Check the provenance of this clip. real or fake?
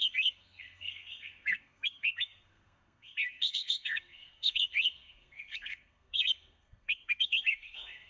fake